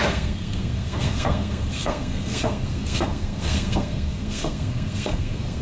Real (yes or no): no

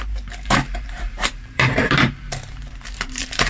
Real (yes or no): no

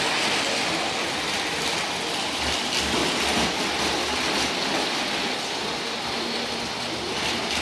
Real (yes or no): yes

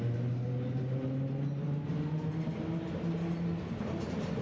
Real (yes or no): yes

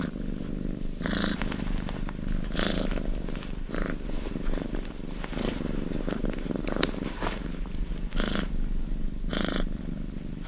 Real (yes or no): no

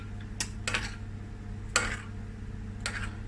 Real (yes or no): yes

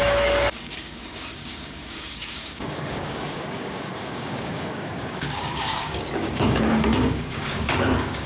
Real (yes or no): no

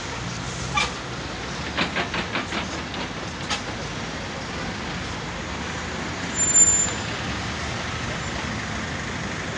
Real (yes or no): yes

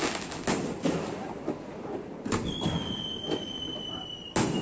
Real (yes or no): yes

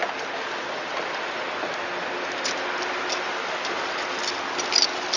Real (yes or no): yes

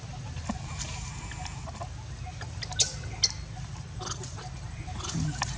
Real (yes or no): yes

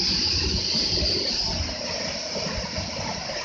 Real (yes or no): yes